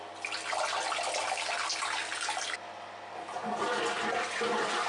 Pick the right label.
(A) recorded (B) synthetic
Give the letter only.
A